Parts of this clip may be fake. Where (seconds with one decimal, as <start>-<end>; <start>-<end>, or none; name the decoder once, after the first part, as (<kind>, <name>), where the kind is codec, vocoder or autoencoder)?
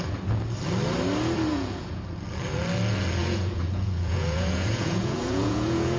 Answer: 1.5-2.0 (vocoder, Vocos); 3.2-6.0